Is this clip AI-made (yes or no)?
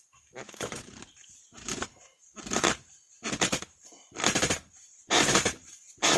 yes